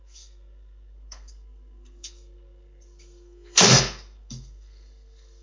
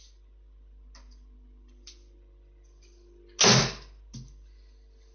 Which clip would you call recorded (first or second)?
second